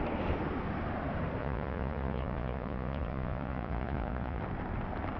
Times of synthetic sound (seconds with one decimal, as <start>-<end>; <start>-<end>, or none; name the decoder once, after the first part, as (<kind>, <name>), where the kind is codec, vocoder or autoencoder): 1.4-4.4 (vocoder, Vocos)

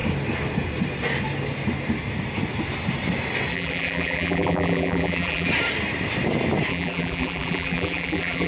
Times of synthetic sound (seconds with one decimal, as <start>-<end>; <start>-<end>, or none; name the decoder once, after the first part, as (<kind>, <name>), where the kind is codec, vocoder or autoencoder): 3.5-5.5 (vocoder, BigVGAN v2); 6.7-8.5

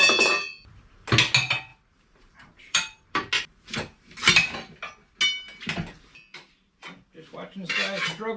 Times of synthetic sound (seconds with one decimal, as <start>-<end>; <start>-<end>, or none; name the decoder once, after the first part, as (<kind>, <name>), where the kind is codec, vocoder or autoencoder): 1.7-3.3 (vocoder, BigVGAN v2)

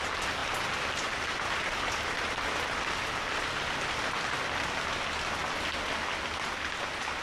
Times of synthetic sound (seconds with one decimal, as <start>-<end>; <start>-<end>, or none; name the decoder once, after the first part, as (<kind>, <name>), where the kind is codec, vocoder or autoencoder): 0.4-4.7 (vocoder, BigVGAN v2)

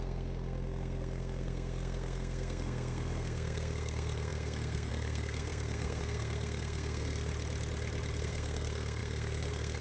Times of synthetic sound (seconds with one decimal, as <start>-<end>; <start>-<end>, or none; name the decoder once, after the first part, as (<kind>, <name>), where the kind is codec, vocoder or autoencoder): 0.0-7.3 (codec, SNAC); 8.2-9.8

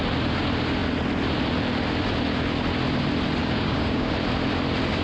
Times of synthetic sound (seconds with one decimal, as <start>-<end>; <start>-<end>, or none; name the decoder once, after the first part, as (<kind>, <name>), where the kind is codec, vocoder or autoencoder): 3.4-4.1 (codec, DAC)

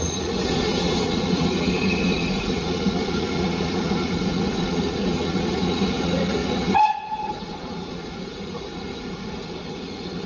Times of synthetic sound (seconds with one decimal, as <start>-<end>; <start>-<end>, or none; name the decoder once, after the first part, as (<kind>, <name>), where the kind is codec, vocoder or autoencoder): 0.0-10.3 (vocoder, Vocos)